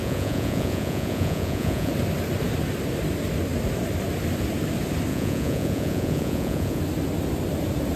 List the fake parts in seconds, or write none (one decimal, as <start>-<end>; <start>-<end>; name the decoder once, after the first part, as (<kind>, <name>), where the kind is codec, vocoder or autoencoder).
0.0-1.9 (vocoder, Vocos); 5.1-6.8